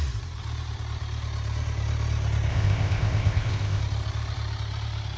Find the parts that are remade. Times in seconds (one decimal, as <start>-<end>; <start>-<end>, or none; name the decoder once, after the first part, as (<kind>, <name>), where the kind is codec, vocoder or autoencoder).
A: 2.5-3.8 (codec, ZipCodec)